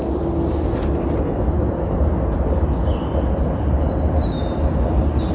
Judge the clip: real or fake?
real